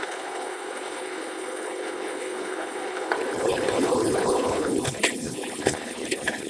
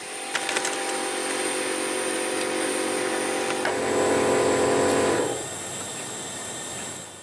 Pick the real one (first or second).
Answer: second